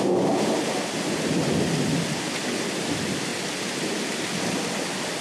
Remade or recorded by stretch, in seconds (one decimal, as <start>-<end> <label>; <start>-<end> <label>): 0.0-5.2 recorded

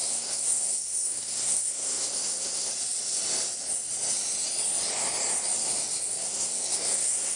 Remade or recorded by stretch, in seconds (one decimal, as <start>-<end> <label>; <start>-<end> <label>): 0.0-2.7 remade; 2.7-6.1 recorded; 6.1-7.4 remade

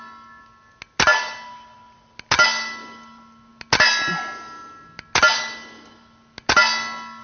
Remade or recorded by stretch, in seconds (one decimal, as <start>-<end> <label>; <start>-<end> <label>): 0.0-7.2 recorded